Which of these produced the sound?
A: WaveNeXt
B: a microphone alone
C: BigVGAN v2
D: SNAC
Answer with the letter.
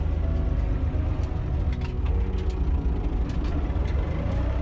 B